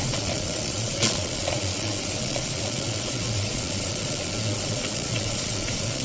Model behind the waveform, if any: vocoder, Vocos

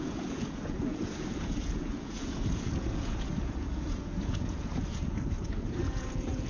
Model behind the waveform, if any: vocoder, Vocos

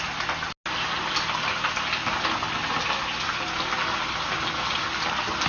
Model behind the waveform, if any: none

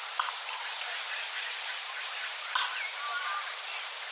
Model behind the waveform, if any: none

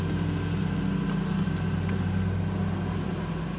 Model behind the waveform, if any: none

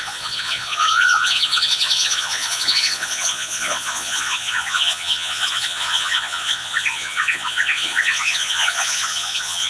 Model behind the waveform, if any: vocoder, Vocos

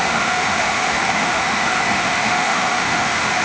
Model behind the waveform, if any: autoencoder, DAC-VAE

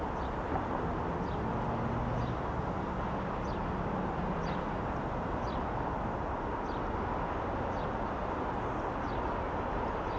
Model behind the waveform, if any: none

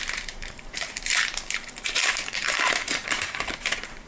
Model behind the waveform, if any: vocoder, BigVGAN v2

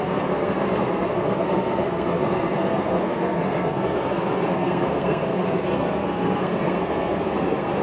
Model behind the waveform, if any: codec, SNAC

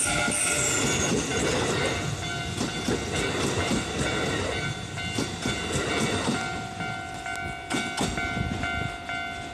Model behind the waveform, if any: none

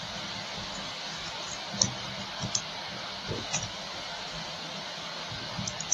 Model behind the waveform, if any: none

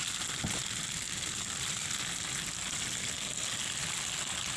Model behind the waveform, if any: none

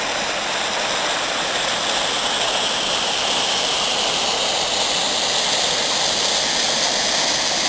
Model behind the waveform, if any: none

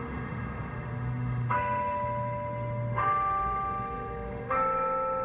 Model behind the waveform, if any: autoencoder, DAC-VAE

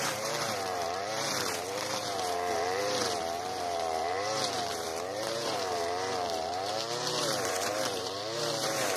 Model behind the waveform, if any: vocoder, BigVGAN v2